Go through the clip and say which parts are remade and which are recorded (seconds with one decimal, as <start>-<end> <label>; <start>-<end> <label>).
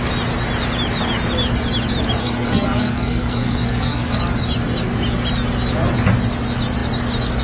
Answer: 0.0-2.2 recorded; 2.2-4.2 remade; 4.2-7.4 recorded